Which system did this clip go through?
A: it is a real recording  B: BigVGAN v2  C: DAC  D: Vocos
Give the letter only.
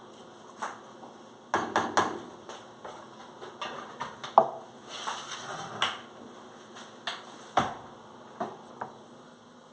A